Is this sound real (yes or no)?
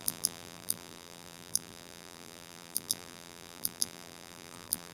no